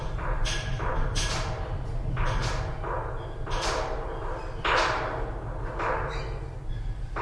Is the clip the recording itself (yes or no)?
yes